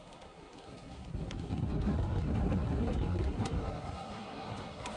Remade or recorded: remade